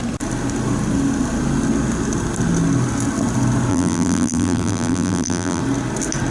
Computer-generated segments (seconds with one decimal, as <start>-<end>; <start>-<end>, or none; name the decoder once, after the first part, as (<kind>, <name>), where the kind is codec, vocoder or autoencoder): 3.7-5.6 (vocoder, BigVGAN v2)